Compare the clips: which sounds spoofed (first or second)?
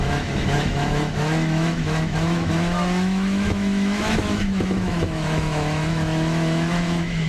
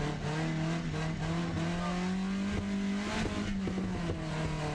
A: first